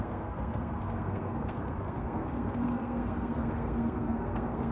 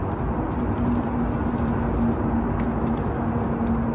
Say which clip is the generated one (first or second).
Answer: first